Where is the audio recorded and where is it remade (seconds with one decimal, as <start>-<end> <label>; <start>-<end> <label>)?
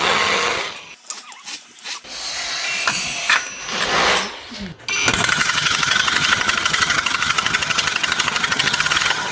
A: 0.0-0.9 remade; 0.9-5.3 recorded; 5.3-9.3 remade